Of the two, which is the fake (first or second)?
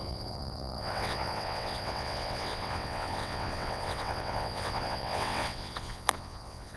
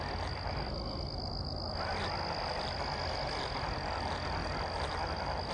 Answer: first